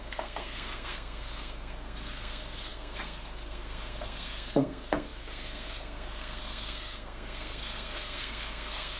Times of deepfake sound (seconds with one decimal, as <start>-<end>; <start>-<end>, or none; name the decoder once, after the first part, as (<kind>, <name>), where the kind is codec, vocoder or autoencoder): 0.0-9.0 (codec, SNAC)